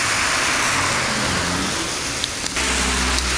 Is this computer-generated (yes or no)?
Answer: no